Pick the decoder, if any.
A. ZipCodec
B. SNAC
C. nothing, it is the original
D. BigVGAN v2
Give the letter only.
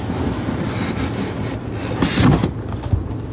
C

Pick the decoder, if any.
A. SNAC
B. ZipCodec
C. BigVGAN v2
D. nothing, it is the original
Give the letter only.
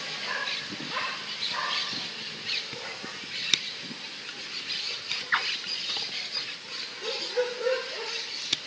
D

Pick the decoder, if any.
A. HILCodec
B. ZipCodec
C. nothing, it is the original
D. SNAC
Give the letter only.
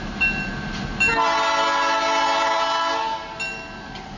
C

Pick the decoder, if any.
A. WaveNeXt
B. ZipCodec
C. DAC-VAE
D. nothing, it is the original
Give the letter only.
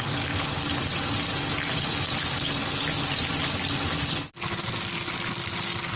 D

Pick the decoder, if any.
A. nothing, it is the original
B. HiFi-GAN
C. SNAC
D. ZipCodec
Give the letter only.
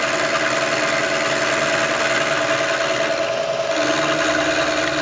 A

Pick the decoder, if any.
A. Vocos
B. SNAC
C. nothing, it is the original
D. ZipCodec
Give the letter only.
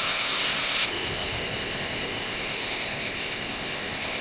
D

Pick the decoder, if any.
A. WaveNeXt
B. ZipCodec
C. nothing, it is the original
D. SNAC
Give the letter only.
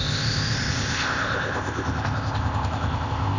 B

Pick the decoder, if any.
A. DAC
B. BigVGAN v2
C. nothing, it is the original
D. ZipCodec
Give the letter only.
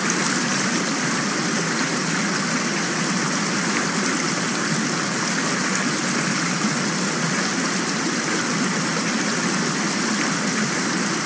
C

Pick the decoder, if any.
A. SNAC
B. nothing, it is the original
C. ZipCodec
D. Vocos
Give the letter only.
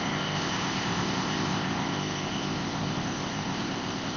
C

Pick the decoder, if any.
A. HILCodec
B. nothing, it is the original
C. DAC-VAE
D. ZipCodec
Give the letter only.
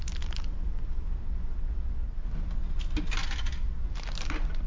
B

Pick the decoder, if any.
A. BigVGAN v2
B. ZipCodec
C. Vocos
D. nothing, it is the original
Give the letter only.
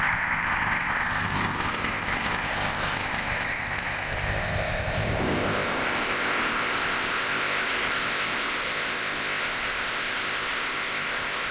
B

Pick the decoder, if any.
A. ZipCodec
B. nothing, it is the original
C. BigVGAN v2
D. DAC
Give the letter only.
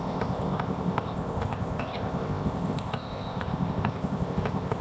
A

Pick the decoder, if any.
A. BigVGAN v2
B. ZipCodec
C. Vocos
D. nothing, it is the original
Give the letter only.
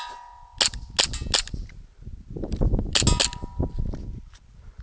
D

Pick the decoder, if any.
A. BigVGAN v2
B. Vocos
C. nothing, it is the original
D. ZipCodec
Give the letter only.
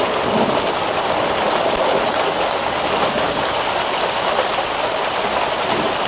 C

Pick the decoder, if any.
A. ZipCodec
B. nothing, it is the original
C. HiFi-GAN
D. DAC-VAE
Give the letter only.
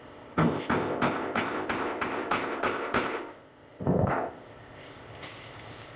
A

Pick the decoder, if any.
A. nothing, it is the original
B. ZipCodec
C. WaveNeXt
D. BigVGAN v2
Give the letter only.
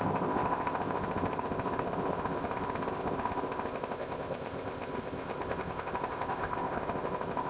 B